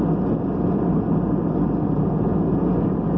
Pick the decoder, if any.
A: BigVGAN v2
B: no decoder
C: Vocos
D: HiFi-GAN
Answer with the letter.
B